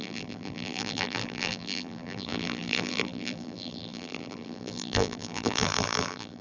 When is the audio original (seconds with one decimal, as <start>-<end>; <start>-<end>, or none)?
none